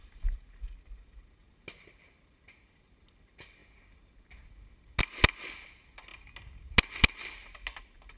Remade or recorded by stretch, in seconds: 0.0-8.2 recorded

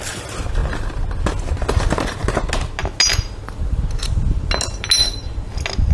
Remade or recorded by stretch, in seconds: 0.0-5.9 recorded

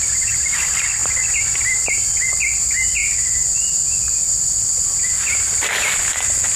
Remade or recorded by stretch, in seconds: 0.0-6.6 recorded

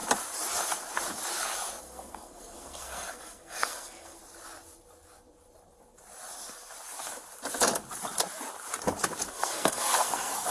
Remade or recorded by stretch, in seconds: 0.0-1.8 recorded; 1.8-4.2 remade; 4.2-9.3 recorded; 9.3-10.5 remade

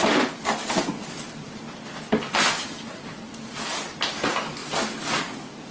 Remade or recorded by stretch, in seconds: 0.0-5.7 recorded